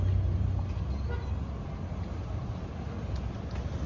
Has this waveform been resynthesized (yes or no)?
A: no